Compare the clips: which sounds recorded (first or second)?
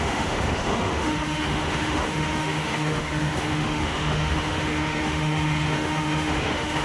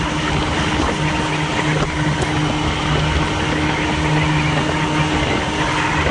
second